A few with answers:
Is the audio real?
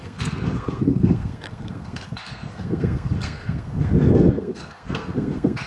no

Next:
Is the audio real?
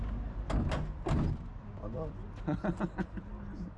yes